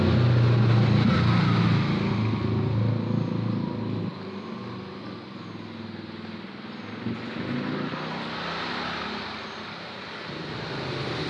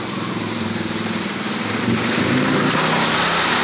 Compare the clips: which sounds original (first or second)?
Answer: first